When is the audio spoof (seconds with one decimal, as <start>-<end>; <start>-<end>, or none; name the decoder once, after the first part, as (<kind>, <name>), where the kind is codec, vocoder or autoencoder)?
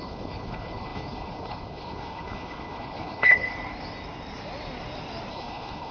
0.0-3.5 (codec, HILCodec); 5.3-5.9